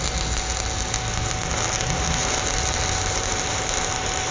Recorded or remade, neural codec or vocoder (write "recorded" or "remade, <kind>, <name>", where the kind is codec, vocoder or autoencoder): recorded